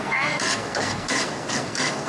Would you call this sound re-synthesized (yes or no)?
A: yes